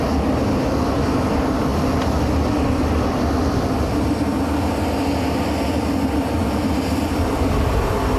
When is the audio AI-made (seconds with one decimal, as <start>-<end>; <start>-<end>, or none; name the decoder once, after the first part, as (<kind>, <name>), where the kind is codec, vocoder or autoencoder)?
none